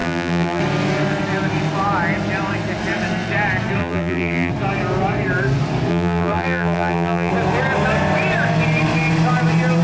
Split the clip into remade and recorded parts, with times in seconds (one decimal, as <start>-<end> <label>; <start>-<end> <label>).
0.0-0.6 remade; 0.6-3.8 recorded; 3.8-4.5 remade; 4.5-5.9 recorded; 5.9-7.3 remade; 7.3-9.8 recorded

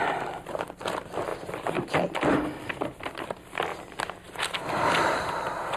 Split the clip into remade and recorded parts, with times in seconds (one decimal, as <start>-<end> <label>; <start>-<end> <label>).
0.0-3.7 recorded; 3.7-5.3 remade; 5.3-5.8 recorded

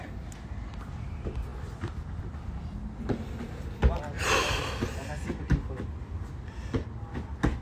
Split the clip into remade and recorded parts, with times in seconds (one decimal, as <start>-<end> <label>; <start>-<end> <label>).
0.0-7.6 recorded

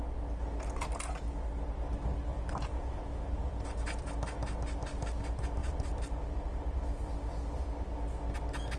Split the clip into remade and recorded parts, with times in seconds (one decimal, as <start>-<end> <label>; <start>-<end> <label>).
0.0-2.3 recorded; 2.3-4.1 remade; 4.1-5.6 recorded; 5.6-6.6 remade; 6.6-8.8 recorded

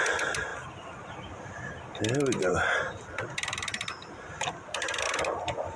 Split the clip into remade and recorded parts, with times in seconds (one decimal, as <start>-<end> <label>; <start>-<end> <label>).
0.0-5.8 recorded

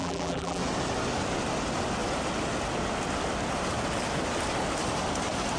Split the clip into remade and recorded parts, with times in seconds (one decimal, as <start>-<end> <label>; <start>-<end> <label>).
0.0-0.6 remade; 0.6-5.6 recorded

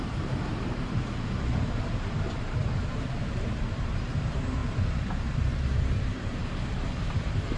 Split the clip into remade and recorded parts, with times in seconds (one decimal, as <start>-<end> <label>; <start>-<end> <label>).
0.0-6.4 remade; 6.4-7.1 recorded; 7.1-7.6 remade

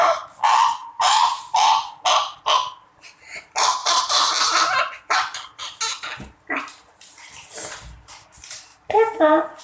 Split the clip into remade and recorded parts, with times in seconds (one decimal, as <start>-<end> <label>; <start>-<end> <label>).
0.0-0.8 recorded; 0.8-1.4 remade; 1.4-3.8 recorded; 3.8-4.3 remade; 4.3-8.7 recorded; 8.7-9.6 remade